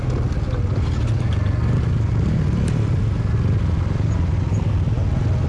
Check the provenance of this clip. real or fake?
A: real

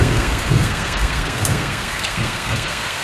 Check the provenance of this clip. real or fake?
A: fake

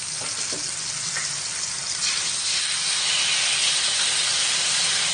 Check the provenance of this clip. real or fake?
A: real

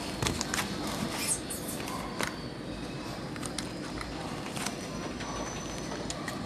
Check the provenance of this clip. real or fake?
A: real